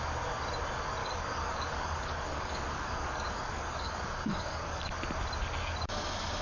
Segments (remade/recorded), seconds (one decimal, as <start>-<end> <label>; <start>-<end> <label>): 0.0-1.0 recorded; 1.0-4.8 remade; 4.8-6.4 recorded